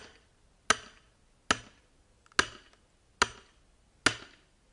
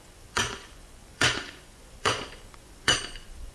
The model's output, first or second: second